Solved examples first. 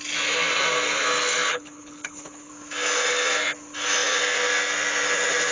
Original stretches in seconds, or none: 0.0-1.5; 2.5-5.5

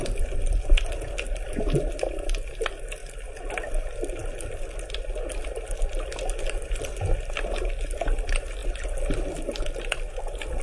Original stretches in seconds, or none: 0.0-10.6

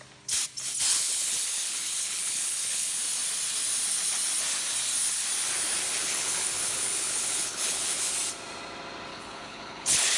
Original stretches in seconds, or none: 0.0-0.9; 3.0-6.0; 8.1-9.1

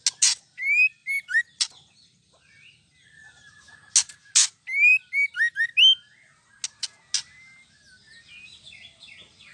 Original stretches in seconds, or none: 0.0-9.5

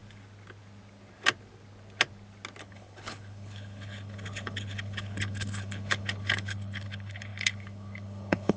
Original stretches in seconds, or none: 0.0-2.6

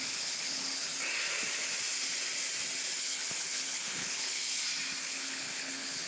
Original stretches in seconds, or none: 0.9-3.0; 4.5-5.0

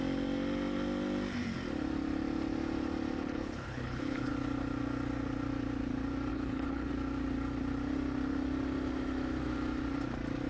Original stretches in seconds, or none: 0.0-3.2; 4.3-6.3; 6.9-10.5